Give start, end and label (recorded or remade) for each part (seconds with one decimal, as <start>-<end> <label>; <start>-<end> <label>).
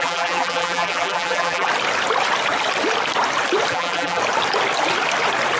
0.0-1.7 remade; 1.7-3.7 recorded; 3.7-4.2 remade; 4.2-5.6 recorded